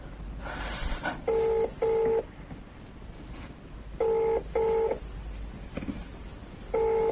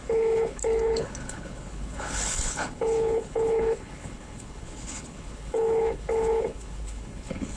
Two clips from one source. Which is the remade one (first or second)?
second